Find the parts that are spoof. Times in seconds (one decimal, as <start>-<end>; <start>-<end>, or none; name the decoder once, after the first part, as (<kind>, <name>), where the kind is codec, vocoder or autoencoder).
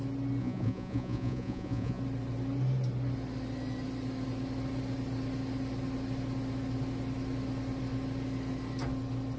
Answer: 0.4-2.0 (vocoder, Vocos)